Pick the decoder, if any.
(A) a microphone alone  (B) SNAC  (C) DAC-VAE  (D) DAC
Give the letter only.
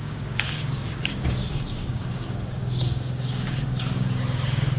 D